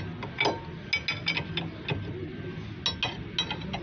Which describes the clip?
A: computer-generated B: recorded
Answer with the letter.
B